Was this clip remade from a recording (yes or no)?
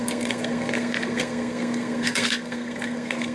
yes